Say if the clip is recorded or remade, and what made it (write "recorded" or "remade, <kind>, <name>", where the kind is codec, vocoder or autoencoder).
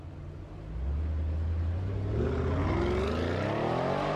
recorded